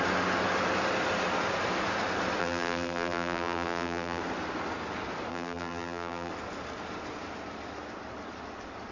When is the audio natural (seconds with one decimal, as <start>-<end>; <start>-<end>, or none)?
0.0-2.4; 4.2-5.3; 6.3-8.9